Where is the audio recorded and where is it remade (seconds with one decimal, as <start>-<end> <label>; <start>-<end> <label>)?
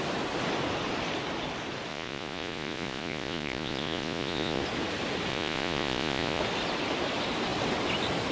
0.0-1.9 recorded; 1.9-4.6 remade; 4.6-5.3 recorded; 5.3-6.4 remade; 6.4-8.3 recorded